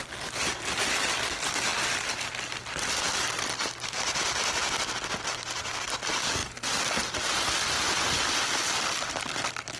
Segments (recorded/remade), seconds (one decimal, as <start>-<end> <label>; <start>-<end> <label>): 0.0-9.8 recorded